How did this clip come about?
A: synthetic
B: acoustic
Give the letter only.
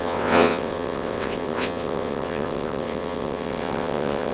A